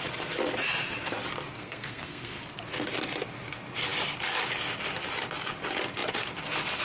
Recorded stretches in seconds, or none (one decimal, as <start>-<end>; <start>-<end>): 0.0-1.5; 2.6-6.8